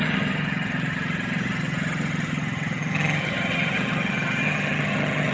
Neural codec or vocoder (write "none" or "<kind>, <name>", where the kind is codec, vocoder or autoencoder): vocoder, HiFi-GAN